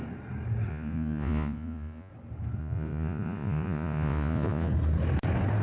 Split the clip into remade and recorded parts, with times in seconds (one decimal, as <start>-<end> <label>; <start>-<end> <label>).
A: 0.0-0.7 recorded; 0.7-2.1 remade; 2.1-2.6 recorded; 2.6-4.7 remade; 4.7-5.6 recorded